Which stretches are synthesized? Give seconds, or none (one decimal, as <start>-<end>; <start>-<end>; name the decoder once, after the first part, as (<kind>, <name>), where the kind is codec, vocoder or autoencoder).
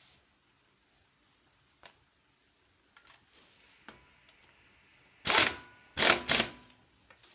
none